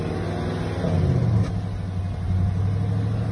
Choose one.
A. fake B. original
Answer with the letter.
B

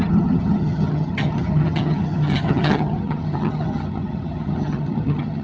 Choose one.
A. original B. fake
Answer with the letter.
B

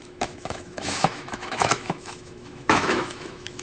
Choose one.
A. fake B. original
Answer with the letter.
A